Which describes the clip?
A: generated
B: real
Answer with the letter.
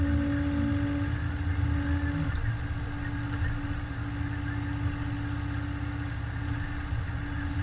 B